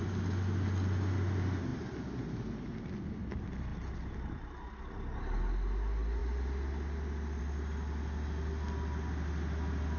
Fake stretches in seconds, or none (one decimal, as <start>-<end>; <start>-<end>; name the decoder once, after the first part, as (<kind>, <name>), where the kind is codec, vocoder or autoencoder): 3.7-4.8 (vocoder, BigVGAN v2)